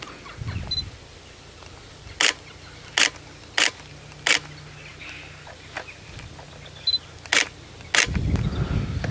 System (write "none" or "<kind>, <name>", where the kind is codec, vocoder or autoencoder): none